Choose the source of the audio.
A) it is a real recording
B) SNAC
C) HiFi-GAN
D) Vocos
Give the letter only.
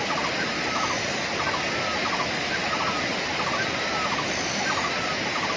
A